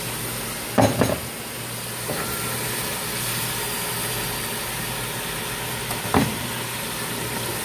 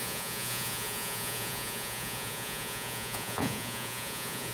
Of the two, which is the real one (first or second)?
first